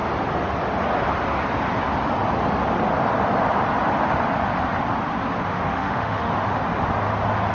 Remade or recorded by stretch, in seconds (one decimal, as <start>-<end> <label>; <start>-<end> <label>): 0.0-5.5 recorded; 5.5-6.3 remade; 6.3-7.5 recorded